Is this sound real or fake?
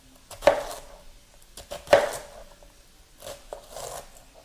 real